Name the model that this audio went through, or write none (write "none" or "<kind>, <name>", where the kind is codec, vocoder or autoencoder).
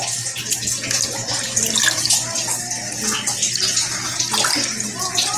none